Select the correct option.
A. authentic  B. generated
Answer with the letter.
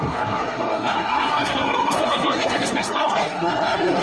B